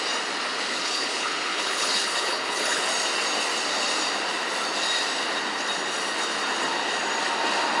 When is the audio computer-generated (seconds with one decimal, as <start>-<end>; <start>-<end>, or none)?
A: 0.7-2.8